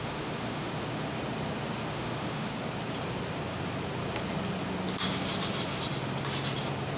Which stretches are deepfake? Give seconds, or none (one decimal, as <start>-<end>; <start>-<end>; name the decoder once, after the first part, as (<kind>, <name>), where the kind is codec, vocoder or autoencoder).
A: 0.0-0.7 (autoencoder, DAC-VAE); 1.9-2.5